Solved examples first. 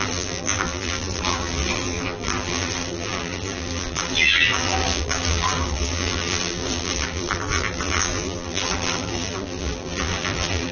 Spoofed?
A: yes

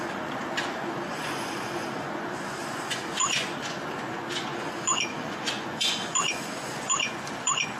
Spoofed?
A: yes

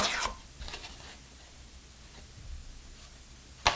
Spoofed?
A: no